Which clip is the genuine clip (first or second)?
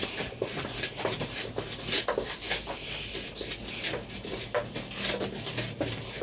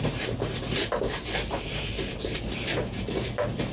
first